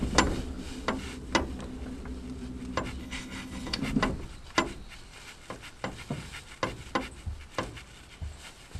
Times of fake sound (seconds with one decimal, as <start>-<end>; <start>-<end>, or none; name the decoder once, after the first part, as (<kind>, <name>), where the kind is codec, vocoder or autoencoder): 3.0-3.8 (codec, HILCodec)

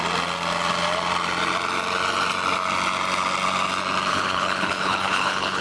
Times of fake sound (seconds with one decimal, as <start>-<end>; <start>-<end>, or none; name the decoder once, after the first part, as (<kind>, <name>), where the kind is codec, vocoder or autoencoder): 4.1-5.6 (codec, HILCodec)

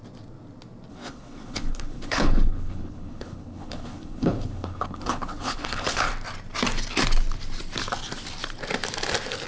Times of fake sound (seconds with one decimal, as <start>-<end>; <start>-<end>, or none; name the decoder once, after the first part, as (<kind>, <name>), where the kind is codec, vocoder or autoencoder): 0.9-6.1 (codec, HILCodec)

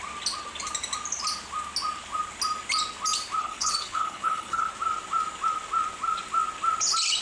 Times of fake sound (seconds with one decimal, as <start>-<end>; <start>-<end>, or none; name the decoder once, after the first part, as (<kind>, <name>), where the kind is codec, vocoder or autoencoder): 3.4-4.7 (codec, HILCodec)

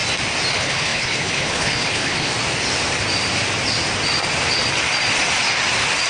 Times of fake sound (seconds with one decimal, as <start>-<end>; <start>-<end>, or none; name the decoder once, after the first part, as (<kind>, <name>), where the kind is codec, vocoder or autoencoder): 0.5-2.3 (codec, HILCodec)

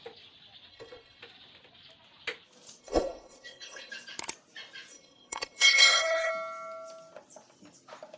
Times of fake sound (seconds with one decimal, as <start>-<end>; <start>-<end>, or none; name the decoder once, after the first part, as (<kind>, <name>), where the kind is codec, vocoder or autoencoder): 0.7-1.2 (codec, HILCodec); 2.8-3.9; 4.9-6.3

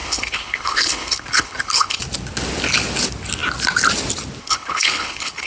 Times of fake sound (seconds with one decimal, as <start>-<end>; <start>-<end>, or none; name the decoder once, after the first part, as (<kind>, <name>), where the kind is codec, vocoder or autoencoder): 0.0-2.0 (codec, HILCodec); 4.4-5.5

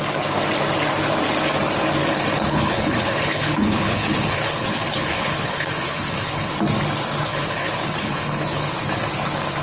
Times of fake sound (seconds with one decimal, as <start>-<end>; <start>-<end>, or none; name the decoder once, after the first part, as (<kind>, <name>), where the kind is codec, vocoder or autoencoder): 2.0-6.6 (codec, HILCodec); 7.3-8.8